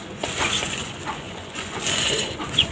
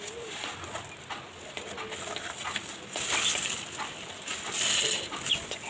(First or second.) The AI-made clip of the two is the first